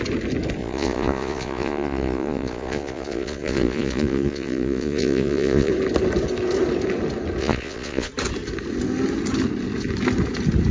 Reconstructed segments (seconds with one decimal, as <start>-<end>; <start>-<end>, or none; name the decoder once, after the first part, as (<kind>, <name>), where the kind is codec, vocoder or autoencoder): 0.6-5.7 (vocoder, Vocos); 7.4-8.1